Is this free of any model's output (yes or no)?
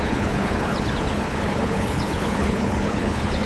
no